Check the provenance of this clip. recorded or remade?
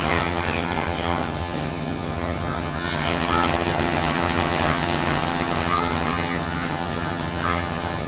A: remade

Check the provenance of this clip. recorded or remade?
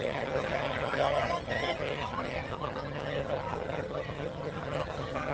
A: remade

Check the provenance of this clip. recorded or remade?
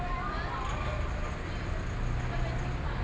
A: recorded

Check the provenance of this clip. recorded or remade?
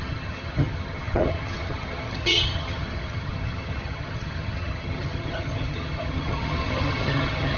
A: remade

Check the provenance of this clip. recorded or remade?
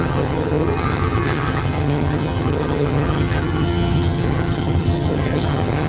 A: remade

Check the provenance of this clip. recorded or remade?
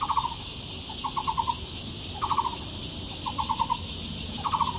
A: recorded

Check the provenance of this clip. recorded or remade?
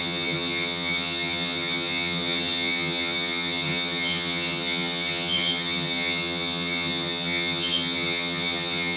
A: remade